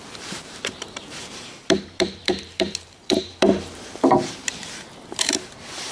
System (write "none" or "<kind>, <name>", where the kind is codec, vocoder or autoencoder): vocoder, BigVGAN v2